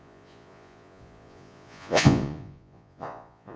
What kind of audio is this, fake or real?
fake